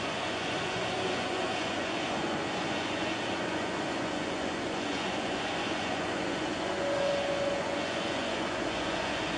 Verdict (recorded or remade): remade